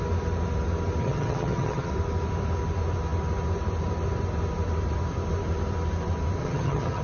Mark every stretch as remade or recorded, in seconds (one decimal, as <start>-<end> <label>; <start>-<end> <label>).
0.0-1.0 recorded; 1.0-1.9 remade; 1.9-6.4 recorded; 6.4-7.0 remade